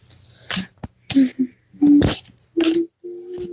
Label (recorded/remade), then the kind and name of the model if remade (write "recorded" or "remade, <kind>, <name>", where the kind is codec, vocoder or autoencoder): recorded